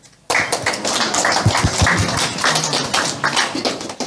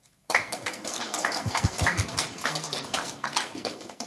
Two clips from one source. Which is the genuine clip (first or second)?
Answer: first